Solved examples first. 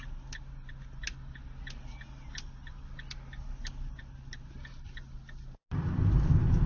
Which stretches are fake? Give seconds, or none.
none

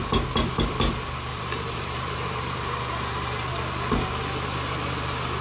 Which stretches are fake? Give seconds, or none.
1.3-3.6 (vocoder, BigVGAN v2)

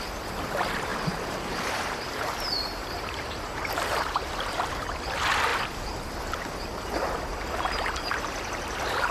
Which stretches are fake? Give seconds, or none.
0.9-4.5 (vocoder, BigVGAN v2)

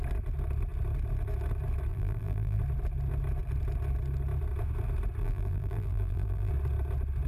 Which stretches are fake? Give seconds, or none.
1.9-2.6 (vocoder, BigVGAN v2); 5.2-6.5

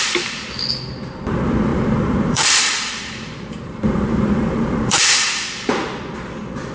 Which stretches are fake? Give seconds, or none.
1.7-5.7 (vocoder, BigVGAN v2)

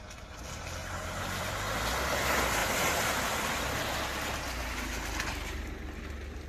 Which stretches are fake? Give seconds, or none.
0.8-1.5 (vocoder, BigVGAN v2)

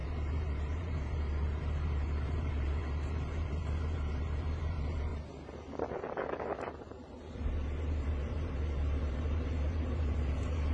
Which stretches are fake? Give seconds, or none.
0.0-5.1 (vocoder, BigVGAN v2); 6.8-10.7